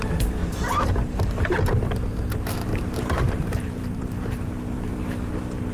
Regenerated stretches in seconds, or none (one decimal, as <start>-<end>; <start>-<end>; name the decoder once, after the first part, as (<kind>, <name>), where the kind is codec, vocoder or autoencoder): 0.4-1.5 (vocoder, BigVGAN v2); 2.7-4.2